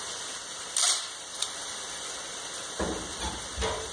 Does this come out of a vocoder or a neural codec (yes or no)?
yes